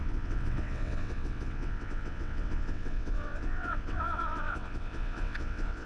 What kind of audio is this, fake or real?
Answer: fake